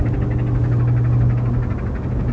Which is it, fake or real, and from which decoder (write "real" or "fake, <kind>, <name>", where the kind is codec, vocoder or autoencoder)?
real